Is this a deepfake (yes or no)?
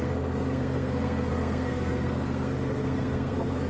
yes